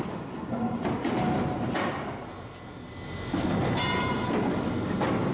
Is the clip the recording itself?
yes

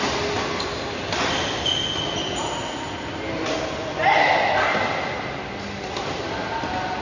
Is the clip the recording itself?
yes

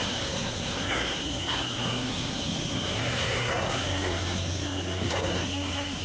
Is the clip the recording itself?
no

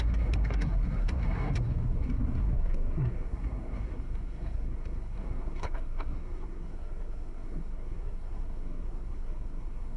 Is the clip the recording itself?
no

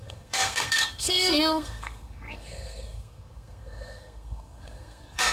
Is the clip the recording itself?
no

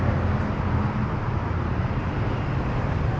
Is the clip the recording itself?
yes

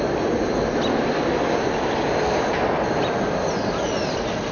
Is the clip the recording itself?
yes